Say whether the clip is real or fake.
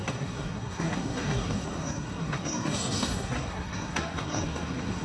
fake